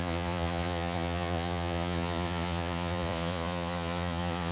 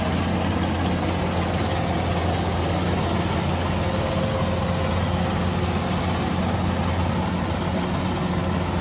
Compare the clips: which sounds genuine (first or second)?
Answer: second